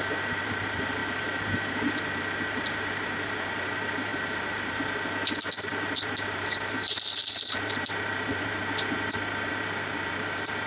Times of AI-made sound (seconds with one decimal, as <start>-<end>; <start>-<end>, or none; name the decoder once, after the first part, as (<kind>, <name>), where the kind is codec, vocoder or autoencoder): 0.0-8.6 (vocoder, BigVGAN v2); 9.5-10.7